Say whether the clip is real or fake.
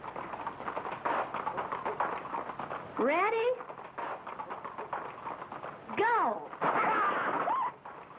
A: real